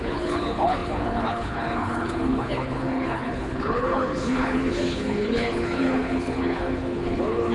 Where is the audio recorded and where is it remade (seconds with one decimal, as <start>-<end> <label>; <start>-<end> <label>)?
0.0-7.5 remade